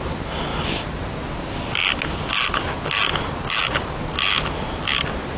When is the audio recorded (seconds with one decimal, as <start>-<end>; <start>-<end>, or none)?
0.0-5.4